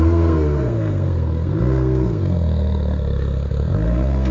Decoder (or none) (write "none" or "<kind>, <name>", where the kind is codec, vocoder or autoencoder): codec, SNAC